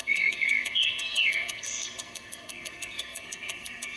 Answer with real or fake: fake